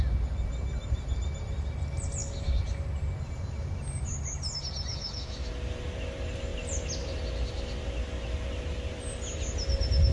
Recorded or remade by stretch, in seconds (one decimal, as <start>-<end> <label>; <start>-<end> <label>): 0.0-4.9 recorded; 4.9-5.5 remade; 5.5-10.1 recorded